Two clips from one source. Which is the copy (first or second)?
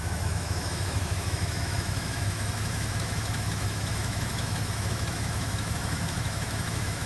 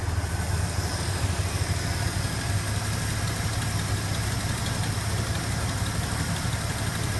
first